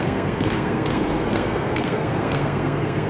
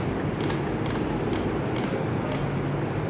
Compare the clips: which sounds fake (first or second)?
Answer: first